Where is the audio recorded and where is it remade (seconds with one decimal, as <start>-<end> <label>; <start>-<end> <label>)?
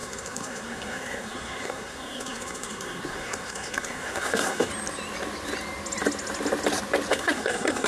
0.0-4.7 remade; 4.7-7.1 recorded; 7.1-7.9 remade